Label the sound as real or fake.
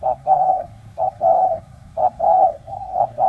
fake